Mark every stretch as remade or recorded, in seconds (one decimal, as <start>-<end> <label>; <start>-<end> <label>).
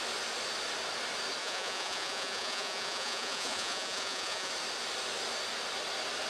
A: 0.0-1.4 recorded; 1.4-4.5 remade; 4.5-6.3 recorded